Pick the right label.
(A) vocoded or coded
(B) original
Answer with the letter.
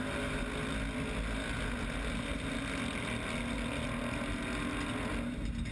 B